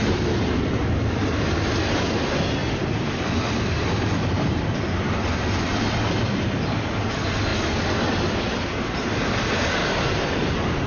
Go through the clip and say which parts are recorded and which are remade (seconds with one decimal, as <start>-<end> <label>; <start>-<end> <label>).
0.0-0.8 remade; 0.8-2.6 recorded; 2.6-4.7 remade; 4.7-9.8 recorded; 9.8-10.5 remade; 10.5-10.9 recorded